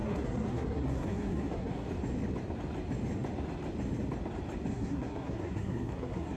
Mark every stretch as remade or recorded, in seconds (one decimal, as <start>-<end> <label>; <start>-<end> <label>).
0.0-1.9 remade; 1.9-4.7 recorded; 4.7-6.4 remade